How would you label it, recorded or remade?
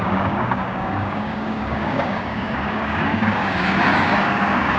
remade